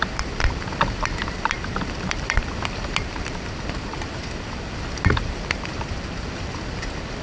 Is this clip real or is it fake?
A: fake